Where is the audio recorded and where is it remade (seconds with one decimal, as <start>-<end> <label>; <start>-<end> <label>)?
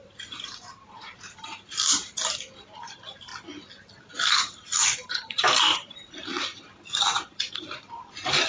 0.0-3.3 remade; 3.3-4.4 recorded; 4.4-8.5 remade